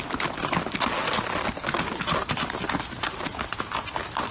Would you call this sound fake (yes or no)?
no